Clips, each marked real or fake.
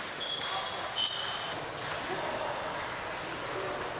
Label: real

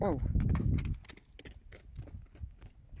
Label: real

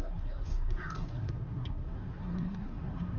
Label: fake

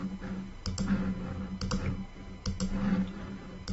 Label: real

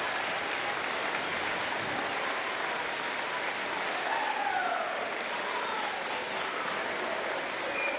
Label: fake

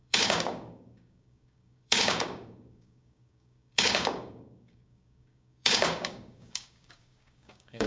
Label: fake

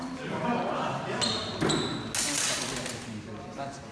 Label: real